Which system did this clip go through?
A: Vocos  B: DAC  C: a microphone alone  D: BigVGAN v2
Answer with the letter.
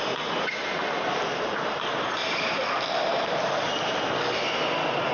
C